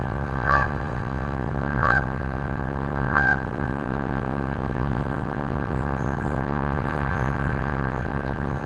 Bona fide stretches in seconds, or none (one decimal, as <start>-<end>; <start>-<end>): none